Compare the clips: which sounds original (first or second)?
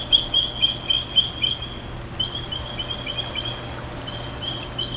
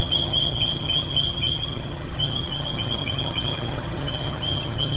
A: first